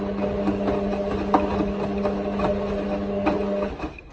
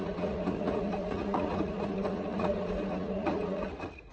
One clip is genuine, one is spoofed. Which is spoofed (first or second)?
second